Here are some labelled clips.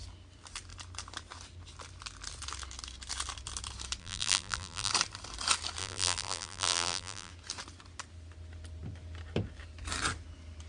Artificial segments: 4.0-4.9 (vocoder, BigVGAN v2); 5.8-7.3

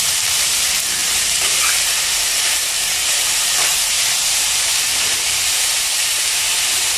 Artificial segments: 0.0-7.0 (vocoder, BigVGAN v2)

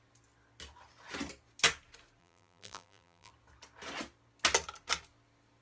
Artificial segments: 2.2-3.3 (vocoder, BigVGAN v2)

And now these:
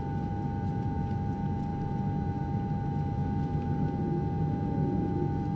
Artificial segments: none

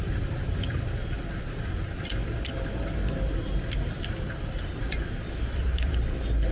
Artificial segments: 3.4-6.1 (vocoder, BigVGAN v2)

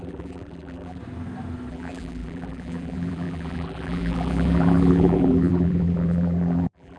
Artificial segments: 0.0-1.0 (vocoder, BigVGAN v2); 1.7-7.0